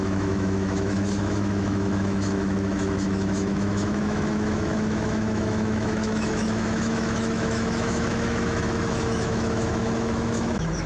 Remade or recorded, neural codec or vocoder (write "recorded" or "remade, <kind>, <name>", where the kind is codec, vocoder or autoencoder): remade, autoencoder, DAC-VAE